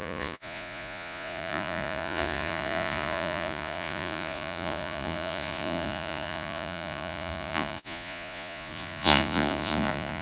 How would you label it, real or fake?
fake